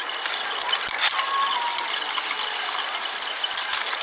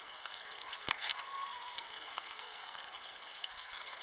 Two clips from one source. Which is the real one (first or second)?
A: first